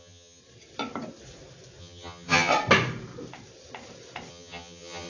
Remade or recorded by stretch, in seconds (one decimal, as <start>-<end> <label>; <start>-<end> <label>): 0.0-0.4 remade; 0.4-1.8 recorded; 1.8-2.5 remade; 2.5-4.3 recorded; 4.3-5.1 remade